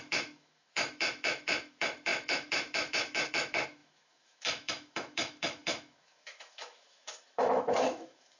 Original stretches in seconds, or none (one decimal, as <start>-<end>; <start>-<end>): none